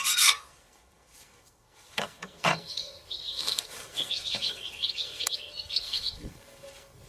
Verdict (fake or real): fake